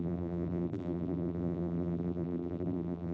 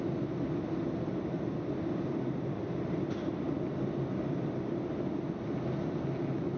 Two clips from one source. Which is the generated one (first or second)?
first